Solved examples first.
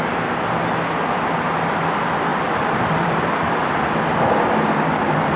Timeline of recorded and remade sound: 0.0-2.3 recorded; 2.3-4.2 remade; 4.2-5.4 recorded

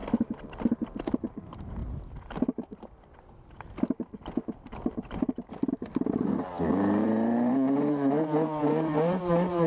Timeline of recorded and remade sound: 0.0-0.6 recorded; 0.6-1.8 remade; 1.8-5.7 recorded; 5.7-9.7 remade

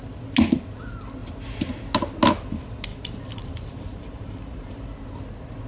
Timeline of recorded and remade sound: 0.0-2.9 recorded; 2.9-5.0 remade; 5.0-5.7 recorded

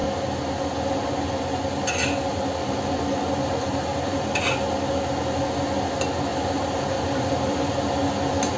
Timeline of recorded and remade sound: 0.0-2.3 recorded; 2.3-3.5 remade; 3.5-3.9 recorded; 3.9-4.4 remade; 4.4-6.3 recorded; 6.3-7.7 remade; 7.7-8.6 recorded